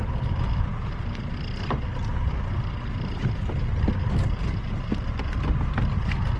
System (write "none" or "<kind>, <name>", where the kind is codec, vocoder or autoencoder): none